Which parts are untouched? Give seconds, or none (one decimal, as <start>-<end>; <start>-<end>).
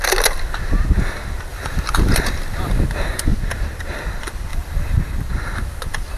0.0-1.5; 2.7-4.5; 5.3-6.2